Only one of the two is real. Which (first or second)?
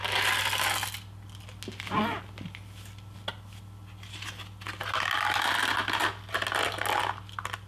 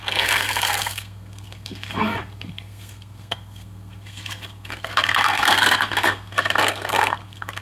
first